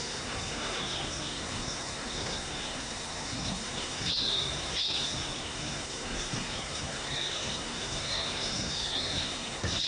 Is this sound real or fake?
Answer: fake